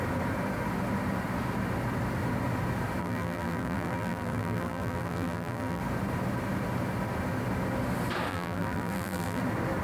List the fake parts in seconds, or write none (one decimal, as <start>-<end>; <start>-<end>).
3.0-5.8; 8.3-9.4

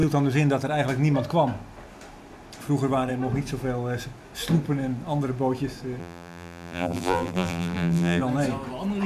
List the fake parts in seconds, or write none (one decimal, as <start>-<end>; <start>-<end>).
6.0-8.2

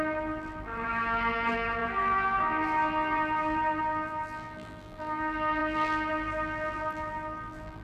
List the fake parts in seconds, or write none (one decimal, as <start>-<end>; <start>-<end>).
0.0-7.8

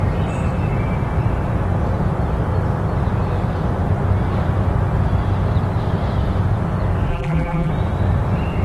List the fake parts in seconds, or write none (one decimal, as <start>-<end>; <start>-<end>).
7.1-7.7

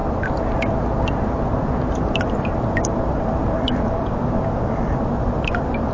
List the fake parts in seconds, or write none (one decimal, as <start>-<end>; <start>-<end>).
2.2-5.9

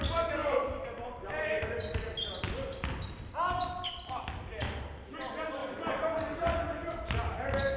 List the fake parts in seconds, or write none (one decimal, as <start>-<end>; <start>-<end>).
0.4-1.3; 5.6-6.1

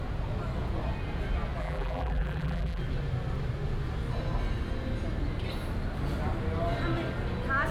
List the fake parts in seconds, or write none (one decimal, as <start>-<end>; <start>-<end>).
1.6-2.8

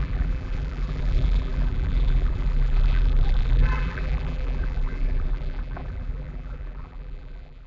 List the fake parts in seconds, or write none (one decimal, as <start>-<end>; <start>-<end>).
0.0-7.7